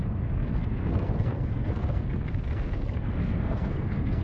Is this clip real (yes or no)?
no